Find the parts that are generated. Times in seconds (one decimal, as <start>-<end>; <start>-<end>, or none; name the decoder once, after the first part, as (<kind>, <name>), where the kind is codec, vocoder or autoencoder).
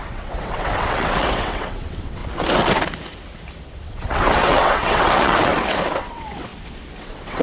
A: 0.0-2.2 (vocoder, WaveNeXt); 3.8-5.5; 6.0-6.5; 7.0-7.4